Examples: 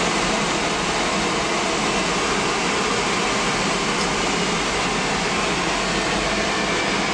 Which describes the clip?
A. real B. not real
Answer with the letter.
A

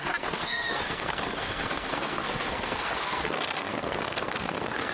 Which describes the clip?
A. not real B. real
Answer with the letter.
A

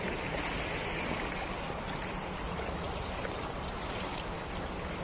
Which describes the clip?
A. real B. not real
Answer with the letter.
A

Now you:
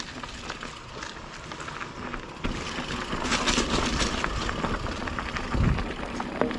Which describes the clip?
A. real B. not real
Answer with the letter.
A